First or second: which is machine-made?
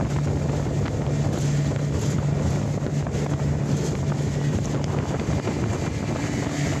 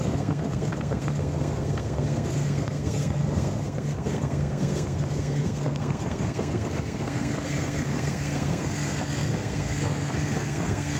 second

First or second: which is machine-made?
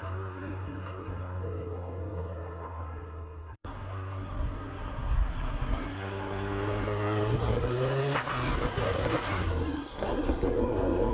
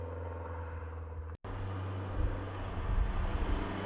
first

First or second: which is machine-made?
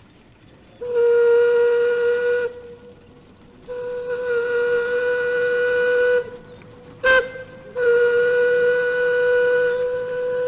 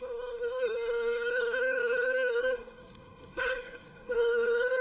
second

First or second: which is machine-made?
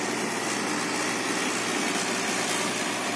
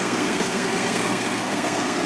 second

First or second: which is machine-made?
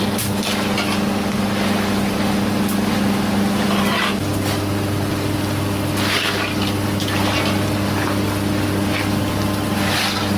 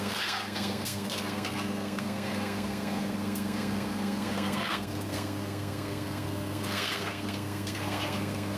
second